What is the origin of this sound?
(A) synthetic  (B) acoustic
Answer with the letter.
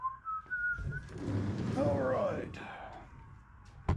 B